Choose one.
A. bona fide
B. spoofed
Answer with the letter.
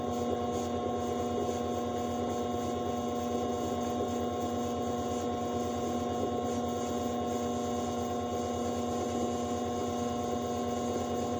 A